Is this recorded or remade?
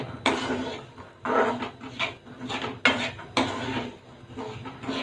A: recorded